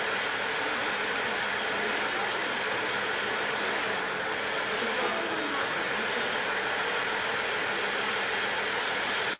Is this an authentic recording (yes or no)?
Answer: yes